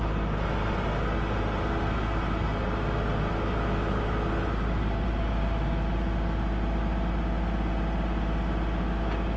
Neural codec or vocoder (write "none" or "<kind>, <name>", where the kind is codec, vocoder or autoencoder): none